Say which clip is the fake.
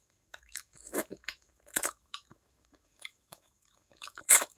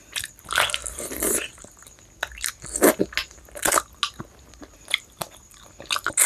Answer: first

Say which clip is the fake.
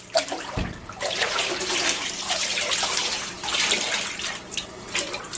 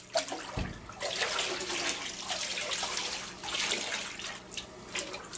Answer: first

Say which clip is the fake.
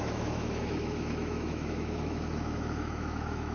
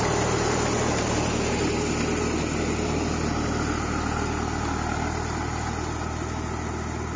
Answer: first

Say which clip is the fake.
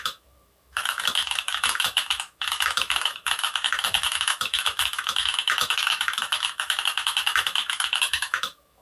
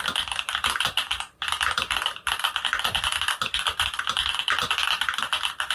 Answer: first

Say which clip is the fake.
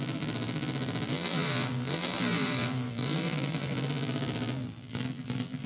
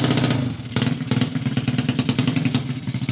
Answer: first